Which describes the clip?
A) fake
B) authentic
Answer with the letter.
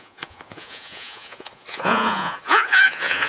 A